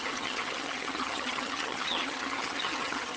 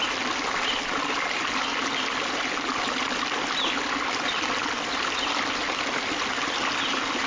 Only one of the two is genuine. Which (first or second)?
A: second